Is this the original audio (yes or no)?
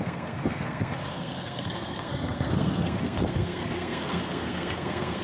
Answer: no